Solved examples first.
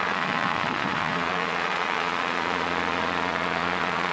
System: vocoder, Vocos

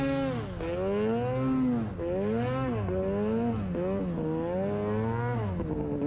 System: none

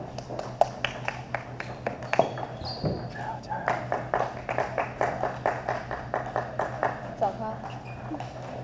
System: none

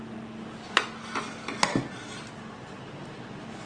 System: none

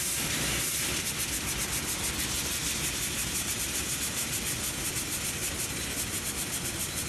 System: none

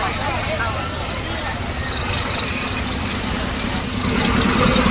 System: none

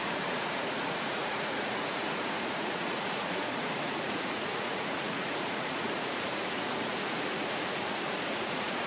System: vocoder, Vocos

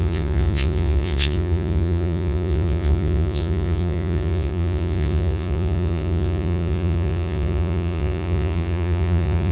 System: vocoder, Vocos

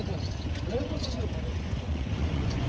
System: vocoder, Vocos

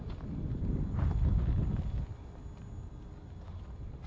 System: none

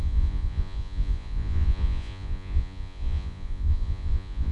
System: vocoder, Vocos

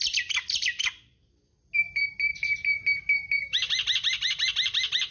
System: none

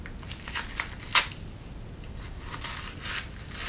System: none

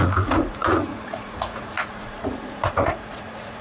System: vocoder, Vocos